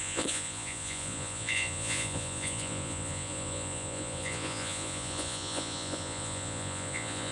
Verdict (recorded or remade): remade